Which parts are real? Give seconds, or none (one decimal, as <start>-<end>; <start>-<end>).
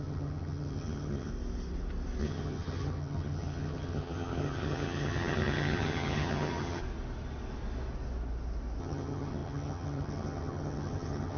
1.3-2.2; 6.8-8.8